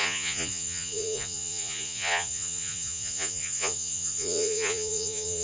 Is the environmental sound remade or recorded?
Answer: remade